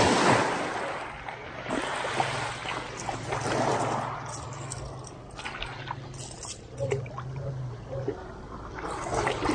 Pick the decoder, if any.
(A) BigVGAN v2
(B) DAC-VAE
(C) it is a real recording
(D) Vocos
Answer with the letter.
C